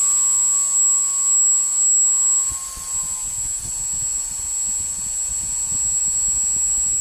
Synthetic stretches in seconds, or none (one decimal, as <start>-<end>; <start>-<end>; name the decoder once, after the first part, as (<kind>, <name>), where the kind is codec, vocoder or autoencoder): none

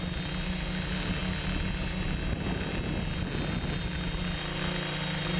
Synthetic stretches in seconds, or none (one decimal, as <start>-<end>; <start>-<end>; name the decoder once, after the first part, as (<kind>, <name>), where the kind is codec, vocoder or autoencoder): none

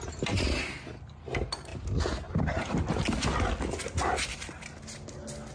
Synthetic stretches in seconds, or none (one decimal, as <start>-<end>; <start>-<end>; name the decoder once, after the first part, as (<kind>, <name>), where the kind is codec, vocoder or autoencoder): none

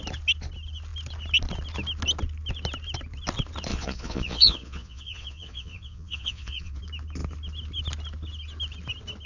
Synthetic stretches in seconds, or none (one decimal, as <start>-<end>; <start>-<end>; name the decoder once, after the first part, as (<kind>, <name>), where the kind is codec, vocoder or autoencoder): 3.7-6.8 (vocoder, Vocos)

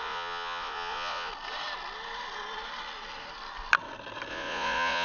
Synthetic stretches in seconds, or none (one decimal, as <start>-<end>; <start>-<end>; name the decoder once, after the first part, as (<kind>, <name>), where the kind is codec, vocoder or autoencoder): 0.0-1.3 (vocoder, Vocos); 4.3-5.0

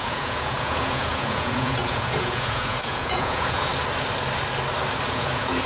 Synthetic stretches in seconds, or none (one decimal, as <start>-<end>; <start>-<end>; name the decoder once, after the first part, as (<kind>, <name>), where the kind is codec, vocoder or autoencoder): 0.0-3.7 (vocoder, Vocos); 5.1-5.7